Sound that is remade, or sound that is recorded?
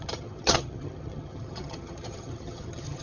remade